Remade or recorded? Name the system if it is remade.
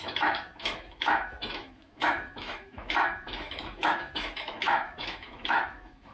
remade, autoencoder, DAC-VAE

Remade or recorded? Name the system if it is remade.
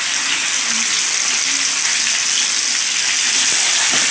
recorded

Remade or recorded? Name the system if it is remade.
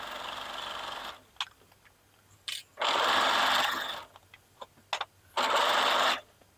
recorded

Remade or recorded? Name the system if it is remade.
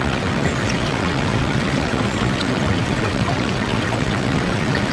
remade, vocoder, WaveNeXt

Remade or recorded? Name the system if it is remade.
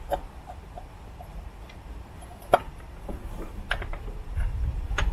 remade, vocoder, BigVGAN v2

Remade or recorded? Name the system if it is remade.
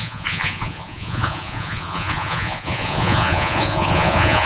remade, vocoder, Vocos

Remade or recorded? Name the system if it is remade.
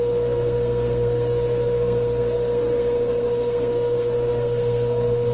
remade, codec, SNAC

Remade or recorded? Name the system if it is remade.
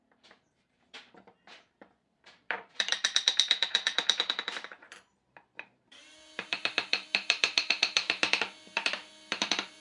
remade, vocoder, BigVGAN v2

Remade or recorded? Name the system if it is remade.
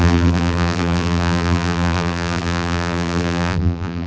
remade, vocoder, BigVGAN v2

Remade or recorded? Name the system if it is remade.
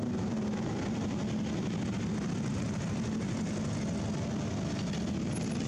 recorded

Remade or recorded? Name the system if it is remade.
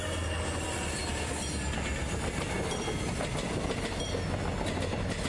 recorded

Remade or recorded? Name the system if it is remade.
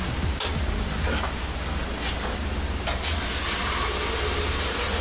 recorded